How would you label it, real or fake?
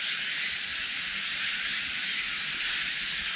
real